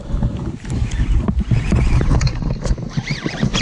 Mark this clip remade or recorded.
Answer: recorded